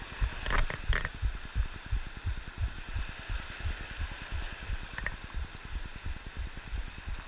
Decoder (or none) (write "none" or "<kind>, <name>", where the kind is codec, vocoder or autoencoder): none